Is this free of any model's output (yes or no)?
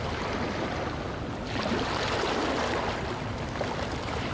yes